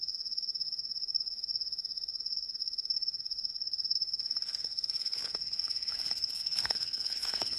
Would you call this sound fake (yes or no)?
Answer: yes